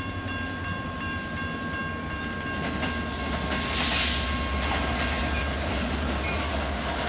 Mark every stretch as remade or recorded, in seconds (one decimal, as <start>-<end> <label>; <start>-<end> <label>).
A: 0.0-1.8 remade; 1.8-5.2 recorded; 5.2-7.1 remade

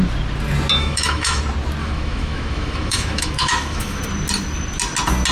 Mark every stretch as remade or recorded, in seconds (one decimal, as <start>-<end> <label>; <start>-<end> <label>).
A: 0.0-0.8 recorded; 0.8-1.4 remade; 1.4-1.8 recorded; 1.8-4.0 remade; 4.0-5.3 recorded

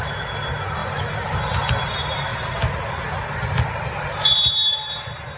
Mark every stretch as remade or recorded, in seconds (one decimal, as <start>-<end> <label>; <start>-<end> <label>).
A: 0.0-5.4 recorded

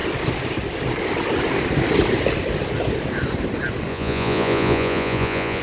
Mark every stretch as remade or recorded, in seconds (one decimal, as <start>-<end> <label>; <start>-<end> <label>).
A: 0.0-3.9 recorded; 3.9-5.6 remade